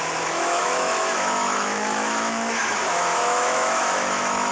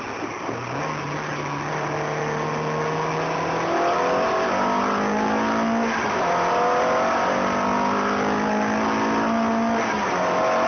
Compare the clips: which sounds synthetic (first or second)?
first